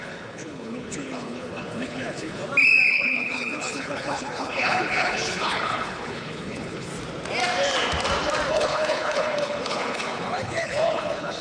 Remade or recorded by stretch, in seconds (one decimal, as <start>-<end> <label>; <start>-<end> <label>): 0.0-2.4 remade; 2.4-2.9 recorded; 2.9-6.9 remade; 6.9-8.5 recorded; 8.5-11.4 remade